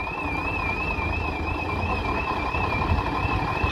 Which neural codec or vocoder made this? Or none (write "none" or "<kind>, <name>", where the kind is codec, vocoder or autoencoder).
none